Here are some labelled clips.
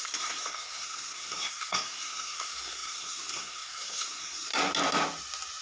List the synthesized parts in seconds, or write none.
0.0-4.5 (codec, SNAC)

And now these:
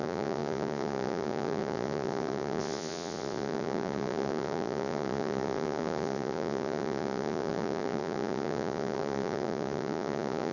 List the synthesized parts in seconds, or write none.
0.0-10.5 (vocoder, Vocos)

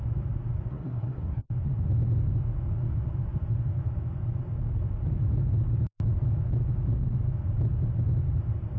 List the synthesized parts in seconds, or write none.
0.7-1.5 (codec, SNAC)

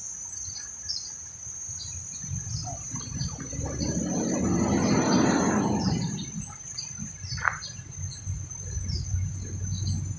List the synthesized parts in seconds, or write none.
none

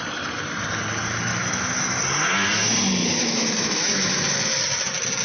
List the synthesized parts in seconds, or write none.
1.3-2.0 (autoencoder, DAC-VAE); 3.0-4.6

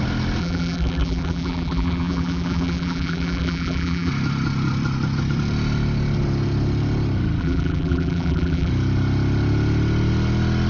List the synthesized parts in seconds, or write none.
0.4-4.1 (vocoder, BigVGAN v2); 7.4-8.7

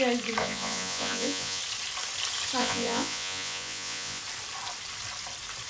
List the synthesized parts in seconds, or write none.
0.4-1.6 (vocoder, Vocos); 2.6-4.2